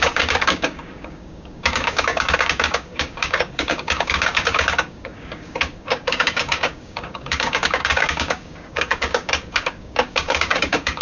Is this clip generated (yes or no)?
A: yes